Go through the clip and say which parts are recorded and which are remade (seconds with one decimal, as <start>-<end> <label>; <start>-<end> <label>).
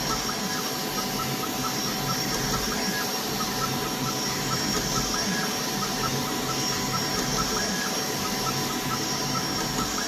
0.0-10.1 recorded